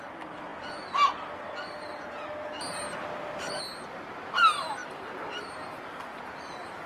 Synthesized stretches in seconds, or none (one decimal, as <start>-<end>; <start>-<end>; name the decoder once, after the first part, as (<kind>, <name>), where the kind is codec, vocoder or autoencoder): none